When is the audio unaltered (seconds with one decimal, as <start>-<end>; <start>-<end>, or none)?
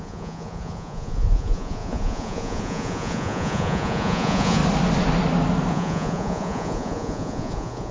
4.6-5.7